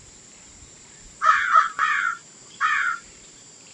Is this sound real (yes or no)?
no